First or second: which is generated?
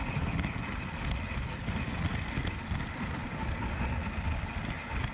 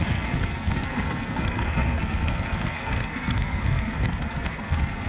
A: second